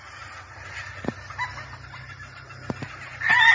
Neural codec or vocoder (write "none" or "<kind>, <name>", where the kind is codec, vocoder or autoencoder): none